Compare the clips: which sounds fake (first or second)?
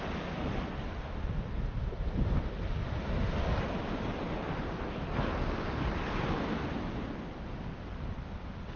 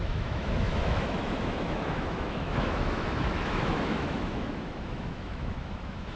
second